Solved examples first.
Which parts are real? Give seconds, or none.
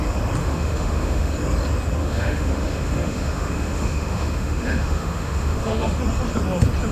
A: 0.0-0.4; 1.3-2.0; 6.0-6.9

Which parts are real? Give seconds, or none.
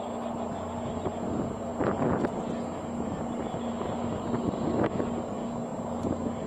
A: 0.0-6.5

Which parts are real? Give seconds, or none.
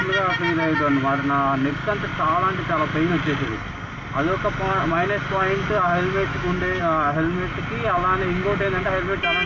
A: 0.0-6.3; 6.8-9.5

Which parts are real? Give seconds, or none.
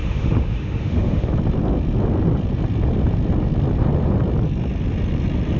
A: 1.3-5.6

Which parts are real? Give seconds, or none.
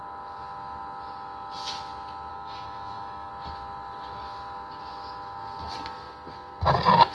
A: 0.0-2.3; 3.3-7.1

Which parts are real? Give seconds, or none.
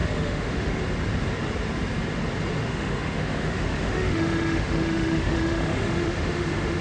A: 0.8-2.6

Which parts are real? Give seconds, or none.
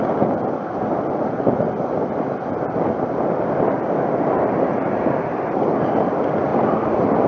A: 0.0-7.3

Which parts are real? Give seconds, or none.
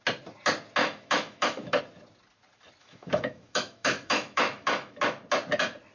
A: 0.0-0.8; 1.8-2.8; 5.0-5.9